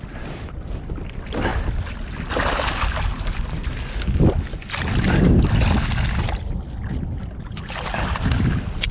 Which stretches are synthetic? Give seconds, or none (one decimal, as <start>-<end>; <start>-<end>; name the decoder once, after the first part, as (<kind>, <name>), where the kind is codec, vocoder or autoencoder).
none